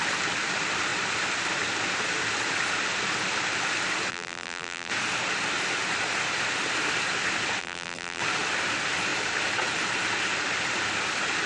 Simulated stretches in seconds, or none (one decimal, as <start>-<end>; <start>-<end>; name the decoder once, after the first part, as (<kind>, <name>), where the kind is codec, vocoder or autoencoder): 4.1-4.9 (vocoder, BigVGAN v2); 7.6-8.2